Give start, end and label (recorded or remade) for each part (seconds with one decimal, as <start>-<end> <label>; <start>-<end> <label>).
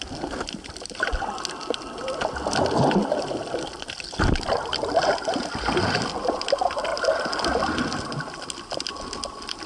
0.0-9.7 recorded